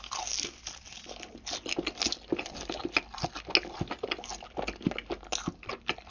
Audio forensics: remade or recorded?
recorded